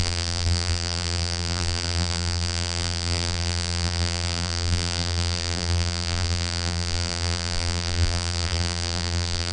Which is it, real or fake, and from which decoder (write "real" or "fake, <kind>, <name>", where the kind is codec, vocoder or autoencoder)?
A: fake, vocoder, BigVGAN v2